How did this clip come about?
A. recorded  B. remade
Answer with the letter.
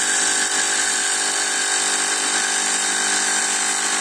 A